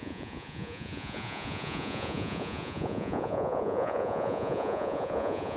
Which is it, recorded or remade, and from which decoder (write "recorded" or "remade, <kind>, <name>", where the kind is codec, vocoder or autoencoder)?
remade, vocoder, Vocos